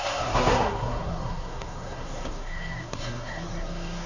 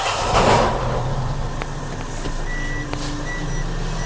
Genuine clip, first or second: second